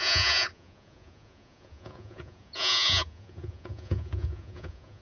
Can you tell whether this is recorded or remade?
remade